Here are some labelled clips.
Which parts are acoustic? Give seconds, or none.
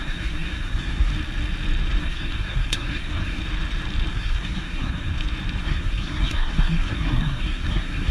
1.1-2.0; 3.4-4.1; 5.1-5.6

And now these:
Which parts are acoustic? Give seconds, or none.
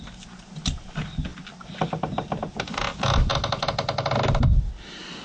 0.0-5.2